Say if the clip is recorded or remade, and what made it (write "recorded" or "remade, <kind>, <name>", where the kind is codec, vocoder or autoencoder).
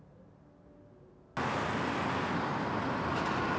recorded